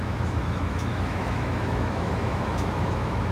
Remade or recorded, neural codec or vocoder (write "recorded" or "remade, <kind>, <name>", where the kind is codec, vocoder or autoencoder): remade, autoencoder, DAC-VAE